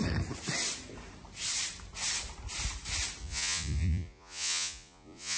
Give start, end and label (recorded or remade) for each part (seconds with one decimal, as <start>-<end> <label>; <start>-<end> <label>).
0.0-3.2 recorded; 3.2-5.4 remade